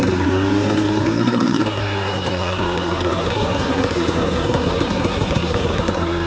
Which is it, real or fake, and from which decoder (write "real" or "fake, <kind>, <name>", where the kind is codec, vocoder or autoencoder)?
fake, codec, SNAC